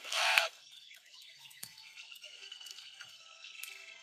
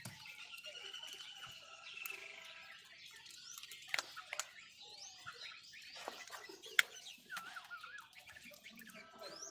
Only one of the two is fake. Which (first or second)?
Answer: first